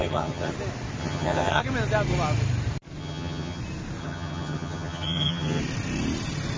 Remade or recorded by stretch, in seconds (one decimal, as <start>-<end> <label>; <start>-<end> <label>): 0.0-0.5 remade; 0.5-1.0 recorded; 1.0-1.6 remade; 1.6-3.0 recorded; 3.0-3.6 remade; 3.6-4.0 recorded; 4.0-5.6 remade; 5.6-6.6 recorded